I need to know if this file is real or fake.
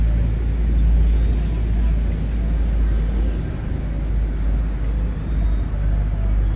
real